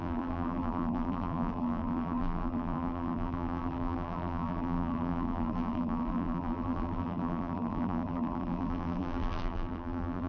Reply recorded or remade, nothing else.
remade